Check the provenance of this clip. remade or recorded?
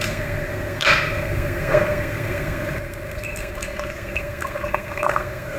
remade